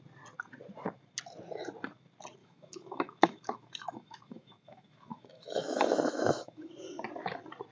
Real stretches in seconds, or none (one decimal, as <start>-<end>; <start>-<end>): 0.0-2.4; 6.7-7.7